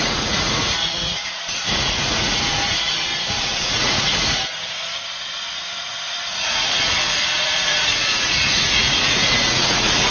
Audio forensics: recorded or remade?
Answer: remade